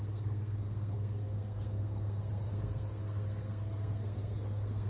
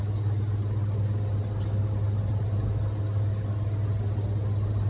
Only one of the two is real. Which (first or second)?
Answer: second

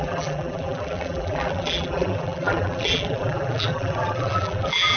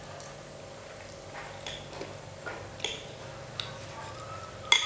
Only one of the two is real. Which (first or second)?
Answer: second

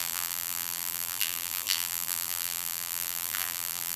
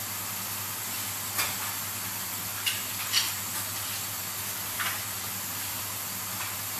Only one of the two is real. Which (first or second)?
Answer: second